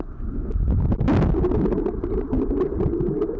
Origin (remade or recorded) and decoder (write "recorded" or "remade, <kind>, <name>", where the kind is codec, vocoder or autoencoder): recorded